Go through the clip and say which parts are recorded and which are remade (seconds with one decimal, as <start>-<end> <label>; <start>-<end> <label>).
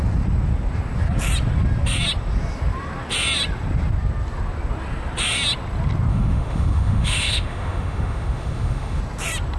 0.0-6.1 recorded; 6.1-9.0 remade; 9.0-9.6 recorded